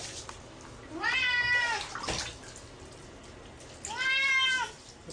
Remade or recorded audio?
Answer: recorded